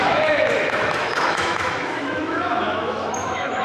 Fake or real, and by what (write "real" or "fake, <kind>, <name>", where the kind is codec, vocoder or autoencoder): fake, autoencoder, DAC-VAE